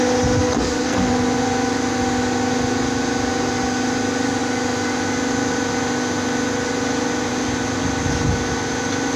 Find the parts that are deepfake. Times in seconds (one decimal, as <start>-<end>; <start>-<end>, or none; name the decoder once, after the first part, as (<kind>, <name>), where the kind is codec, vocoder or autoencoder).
0.4-1.1 (codec, SNAC)